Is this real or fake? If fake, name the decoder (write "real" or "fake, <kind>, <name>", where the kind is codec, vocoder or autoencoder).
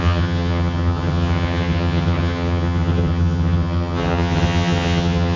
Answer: fake, vocoder, HiFi-GAN